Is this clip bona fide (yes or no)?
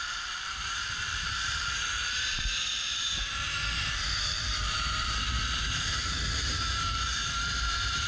no